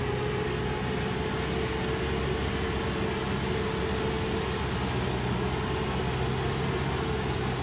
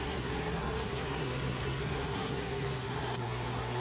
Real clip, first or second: first